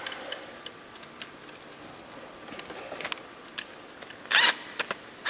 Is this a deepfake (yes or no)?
no